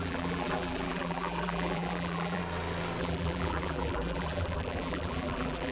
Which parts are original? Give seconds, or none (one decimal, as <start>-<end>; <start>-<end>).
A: 2.4-3.0

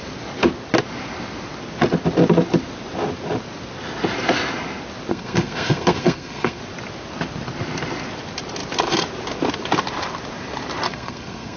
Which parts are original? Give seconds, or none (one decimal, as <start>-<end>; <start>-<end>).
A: 0.0-5.1; 6.6-10.9